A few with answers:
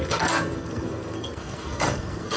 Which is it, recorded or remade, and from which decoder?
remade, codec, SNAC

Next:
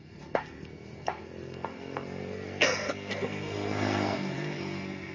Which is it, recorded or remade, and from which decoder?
remade, codec, SNAC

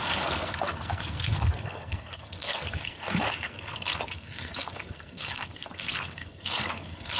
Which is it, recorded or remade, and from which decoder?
remade, codec, SNAC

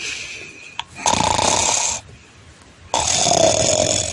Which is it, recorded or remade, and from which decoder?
recorded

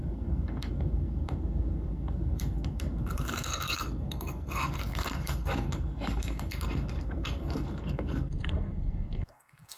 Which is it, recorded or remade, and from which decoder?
remade, codec, SNAC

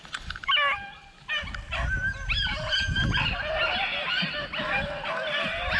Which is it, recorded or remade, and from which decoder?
recorded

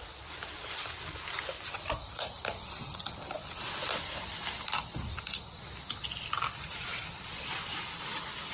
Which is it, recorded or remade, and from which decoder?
recorded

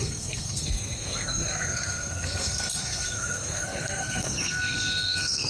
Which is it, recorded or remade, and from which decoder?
remade, codec, SNAC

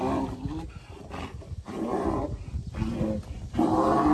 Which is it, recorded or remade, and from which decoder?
recorded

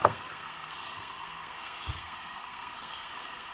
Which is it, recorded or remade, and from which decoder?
remade, codec, SNAC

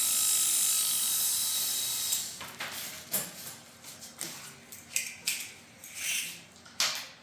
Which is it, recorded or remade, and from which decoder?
recorded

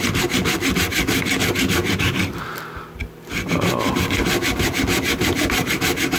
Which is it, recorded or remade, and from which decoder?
recorded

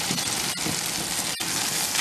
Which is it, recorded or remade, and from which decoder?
recorded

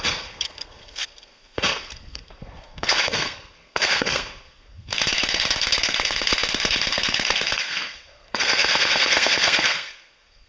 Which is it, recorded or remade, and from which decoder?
remade, codec, SNAC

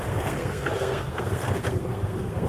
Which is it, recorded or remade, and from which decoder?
remade, codec, SNAC